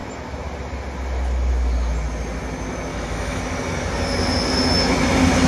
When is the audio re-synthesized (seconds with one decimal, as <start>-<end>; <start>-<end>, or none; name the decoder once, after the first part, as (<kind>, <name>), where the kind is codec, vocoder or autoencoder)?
2.9-3.4 (autoencoder, DAC-VAE)